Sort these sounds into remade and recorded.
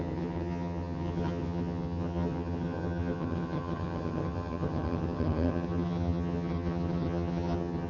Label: remade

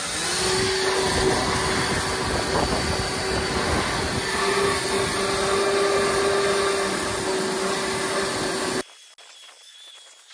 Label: recorded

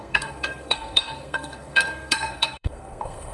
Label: remade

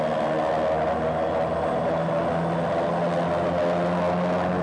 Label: recorded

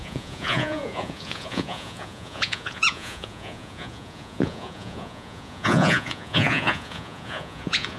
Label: remade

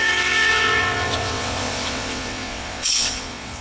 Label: remade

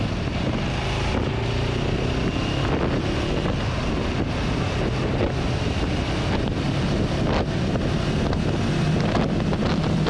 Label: recorded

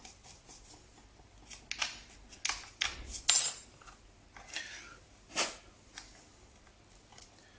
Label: recorded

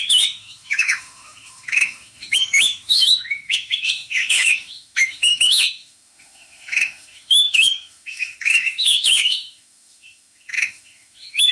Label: remade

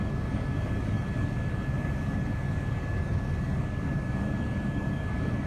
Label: remade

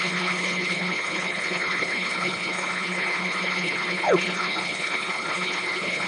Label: remade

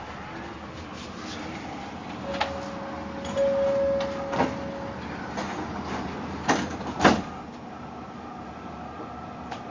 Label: recorded